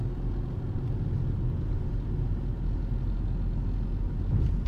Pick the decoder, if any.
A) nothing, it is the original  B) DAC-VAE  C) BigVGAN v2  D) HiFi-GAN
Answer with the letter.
A